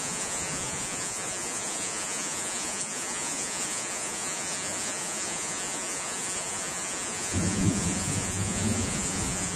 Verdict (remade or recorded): remade